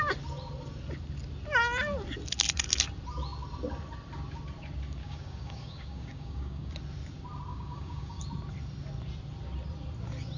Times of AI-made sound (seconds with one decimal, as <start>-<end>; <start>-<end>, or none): 5.0-6.7; 7.5-8.2